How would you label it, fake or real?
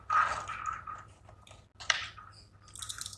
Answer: real